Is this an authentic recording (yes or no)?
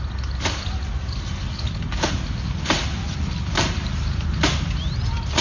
yes